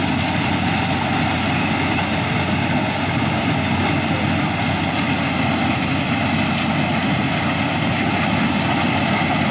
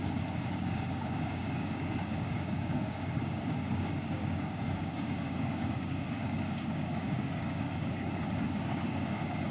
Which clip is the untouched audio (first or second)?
first